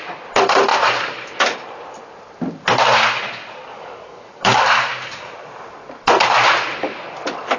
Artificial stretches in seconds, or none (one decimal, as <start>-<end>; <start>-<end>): 3.7-4.6